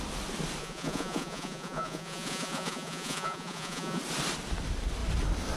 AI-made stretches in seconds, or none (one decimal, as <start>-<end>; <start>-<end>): 0.6-4.0